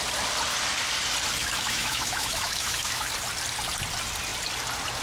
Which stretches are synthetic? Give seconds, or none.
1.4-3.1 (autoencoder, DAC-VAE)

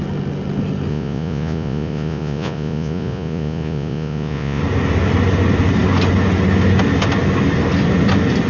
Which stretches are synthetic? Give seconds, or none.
0.9-4.6 (vocoder, Vocos)

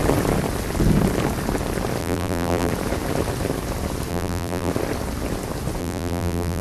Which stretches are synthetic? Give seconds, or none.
2.0-2.7 (vocoder, BigVGAN v2); 4.1-4.7; 5.8-6.6

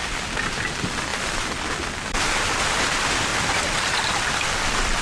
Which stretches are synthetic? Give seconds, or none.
none

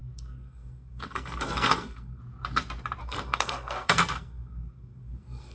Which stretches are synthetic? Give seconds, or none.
0.0-2.2 (codec, SNAC); 3.0-5.5